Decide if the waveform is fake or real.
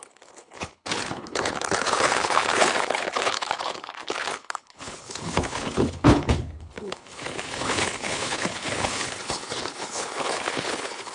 fake